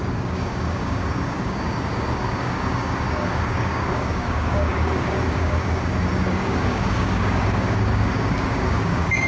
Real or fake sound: fake